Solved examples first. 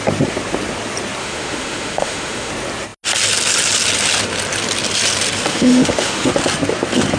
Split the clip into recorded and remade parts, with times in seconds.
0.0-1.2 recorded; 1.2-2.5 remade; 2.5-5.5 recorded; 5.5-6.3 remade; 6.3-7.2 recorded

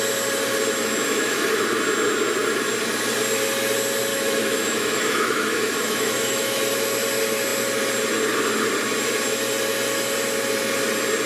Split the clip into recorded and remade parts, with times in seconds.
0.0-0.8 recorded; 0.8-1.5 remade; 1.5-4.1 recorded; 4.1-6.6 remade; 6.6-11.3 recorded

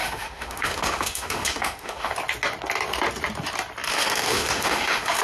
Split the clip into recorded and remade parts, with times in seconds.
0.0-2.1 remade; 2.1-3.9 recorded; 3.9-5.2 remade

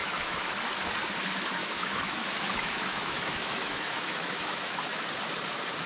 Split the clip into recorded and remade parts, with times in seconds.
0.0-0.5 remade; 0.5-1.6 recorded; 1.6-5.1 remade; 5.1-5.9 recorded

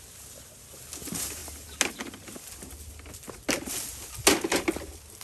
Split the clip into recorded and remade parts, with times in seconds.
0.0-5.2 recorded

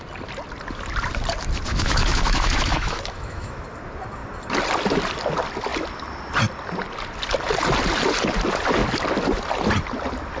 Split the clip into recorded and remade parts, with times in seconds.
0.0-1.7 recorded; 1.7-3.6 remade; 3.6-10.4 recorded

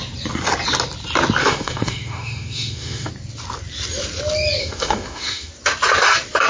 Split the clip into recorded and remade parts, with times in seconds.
0.0-1.4 recorded; 1.4-3.1 remade; 3.1-4.6 recorded; 4.6-5.5 remade; 5.5-6.5 recorded

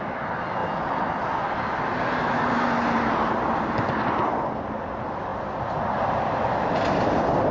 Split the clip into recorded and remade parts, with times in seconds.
0.0-7.5 recorded